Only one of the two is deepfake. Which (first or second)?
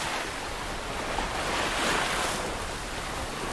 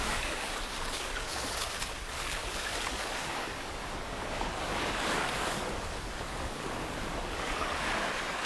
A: second